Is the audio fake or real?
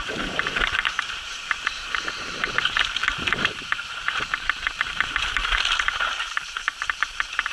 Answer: fake